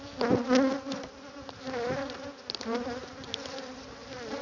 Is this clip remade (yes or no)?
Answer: no